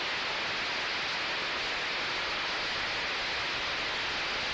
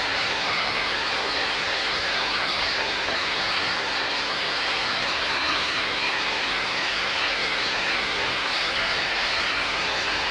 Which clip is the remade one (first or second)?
second